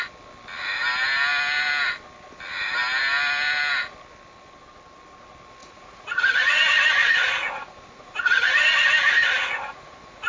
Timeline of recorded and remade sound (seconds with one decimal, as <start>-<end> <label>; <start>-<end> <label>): 0.0-5.6 recorded; 5.6-10.3 remade